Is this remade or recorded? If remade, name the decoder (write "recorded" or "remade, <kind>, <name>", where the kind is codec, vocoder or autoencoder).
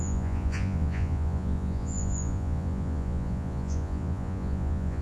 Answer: remade, vocoder, Vocos